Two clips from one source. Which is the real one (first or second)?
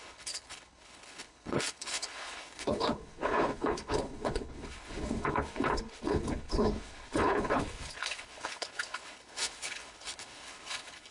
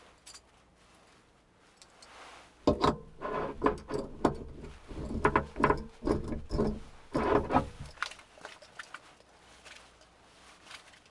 second